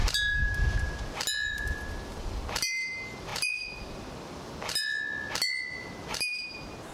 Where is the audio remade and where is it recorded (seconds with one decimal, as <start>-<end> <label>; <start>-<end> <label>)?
0.0-1.5 recorded; 1.5-4.9 remade; 4.9-5.6 recorded; 5.6-6.9 remade